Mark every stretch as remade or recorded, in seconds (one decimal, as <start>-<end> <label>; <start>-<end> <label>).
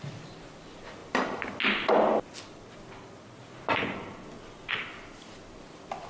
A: 0.0-6.1 recorded